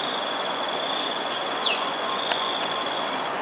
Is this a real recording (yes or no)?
no